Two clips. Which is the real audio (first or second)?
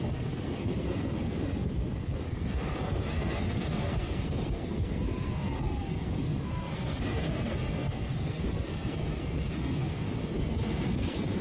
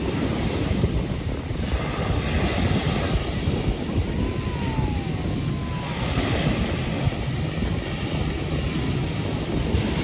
second